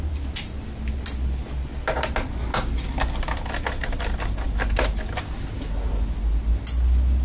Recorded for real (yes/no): yes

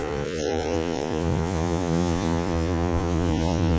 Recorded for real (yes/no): no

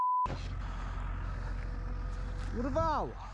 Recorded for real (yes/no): yes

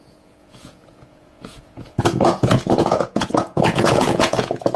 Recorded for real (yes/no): no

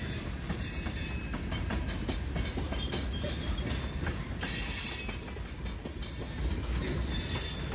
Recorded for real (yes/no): yes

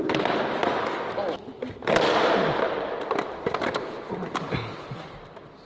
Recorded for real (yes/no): yes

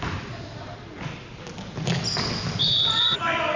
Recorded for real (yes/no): yes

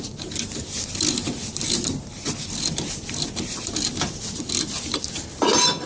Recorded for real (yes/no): yes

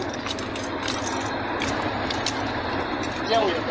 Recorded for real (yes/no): yes